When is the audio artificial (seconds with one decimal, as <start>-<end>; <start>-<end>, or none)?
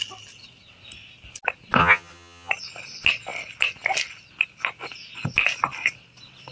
1.8-2.5